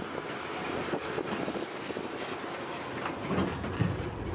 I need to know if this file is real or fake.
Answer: real